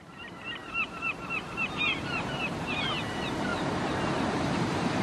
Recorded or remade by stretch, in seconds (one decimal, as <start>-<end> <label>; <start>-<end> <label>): 0.0-3.5 remade; 3.5-4.1 recorded; 4.1-5.0 remade